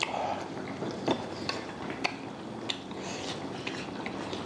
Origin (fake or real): real